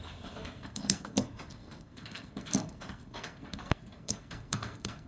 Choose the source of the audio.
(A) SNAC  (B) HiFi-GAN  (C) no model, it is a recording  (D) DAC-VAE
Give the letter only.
A